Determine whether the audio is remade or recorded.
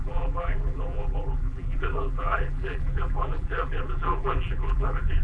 remade